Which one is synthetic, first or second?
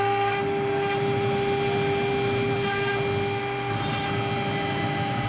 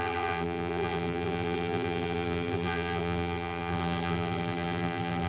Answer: second